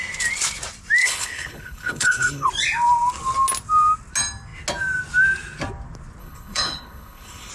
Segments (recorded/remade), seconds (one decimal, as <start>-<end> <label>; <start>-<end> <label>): 0.0-1.0 recorded; 1.0-2.5 remade; 2.5-6.2 recorded; 6.2-7.5 remade